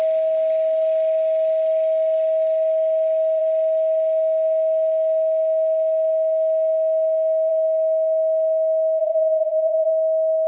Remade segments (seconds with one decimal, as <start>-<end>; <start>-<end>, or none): 9.0-9.9